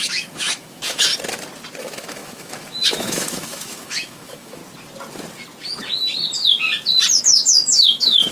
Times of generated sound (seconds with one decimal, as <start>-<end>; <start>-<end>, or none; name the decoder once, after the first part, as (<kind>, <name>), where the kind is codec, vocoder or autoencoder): 0.0-1.1 (autoencoder, DAC-VAE); 1.8-4.6; 7.2-8.3